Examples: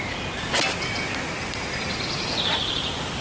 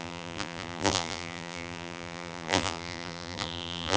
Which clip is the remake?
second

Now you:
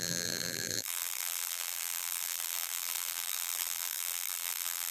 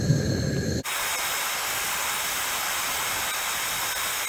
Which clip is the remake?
first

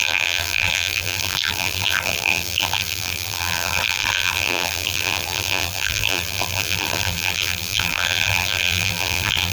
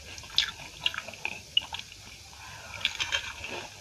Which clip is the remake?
first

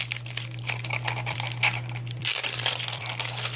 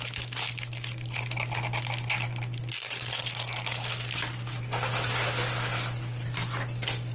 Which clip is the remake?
first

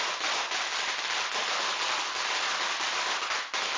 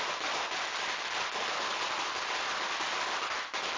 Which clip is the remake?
second